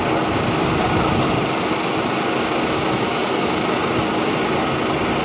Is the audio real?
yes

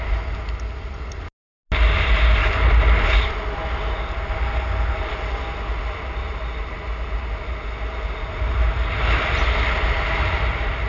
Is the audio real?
yes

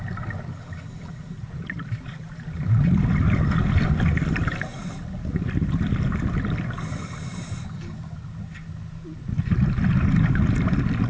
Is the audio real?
yes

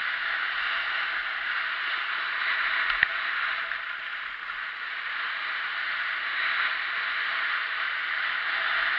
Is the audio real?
yes